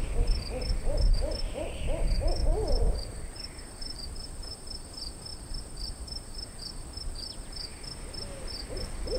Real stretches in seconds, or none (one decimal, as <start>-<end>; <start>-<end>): 0.0-2.4; 4.6-5.3; 7.1-9.2